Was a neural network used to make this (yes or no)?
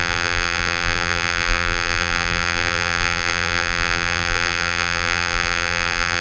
yes